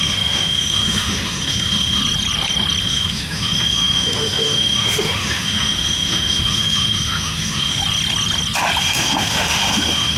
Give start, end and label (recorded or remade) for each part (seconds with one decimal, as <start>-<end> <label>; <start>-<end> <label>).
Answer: 0.0-2.0 remade; 2.0-2.8 recorded; 2.8-7.8 remade; 7.8-8.8 recorded; 8.8-10.2 remade